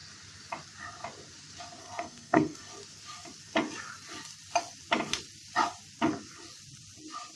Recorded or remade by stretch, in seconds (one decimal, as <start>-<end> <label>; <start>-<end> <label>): 0.0-1.8 recorded; 1.8-2.7 remade; 2.7-7.4 recorded